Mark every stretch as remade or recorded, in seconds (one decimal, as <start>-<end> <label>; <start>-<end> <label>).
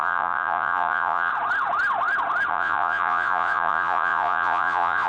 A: 0.0-1.3 remade; 1.3-2.5 recorded; 2.5-5.1 remade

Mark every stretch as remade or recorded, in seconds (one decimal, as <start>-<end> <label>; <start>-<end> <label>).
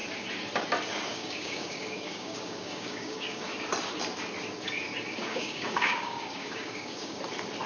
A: 0.0-1.1 recorded; 1.1-3.5 remade; 3.5-5.2 recorded; 5.2-7.2 remade; 7.2-7.7 recorded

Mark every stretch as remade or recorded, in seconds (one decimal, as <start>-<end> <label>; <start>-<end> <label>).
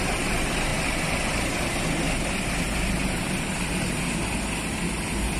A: 0.0-5.4 recorded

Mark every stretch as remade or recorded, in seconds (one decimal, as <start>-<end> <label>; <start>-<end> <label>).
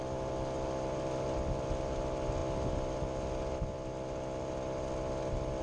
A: 0.0-5.6 recorded